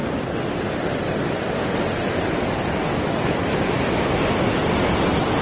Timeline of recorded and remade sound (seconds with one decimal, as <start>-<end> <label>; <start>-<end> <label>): 0.0-2.9 recorded; 2.9-4.0 remade; 4.0-5.4 recorded